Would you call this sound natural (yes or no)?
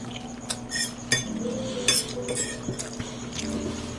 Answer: yes